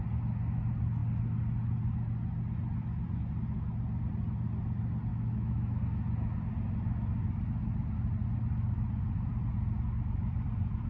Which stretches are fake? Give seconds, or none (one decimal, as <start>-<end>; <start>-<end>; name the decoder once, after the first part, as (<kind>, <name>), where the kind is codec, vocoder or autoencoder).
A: 5.1-5.8 (autoencoder, DAC-VAE)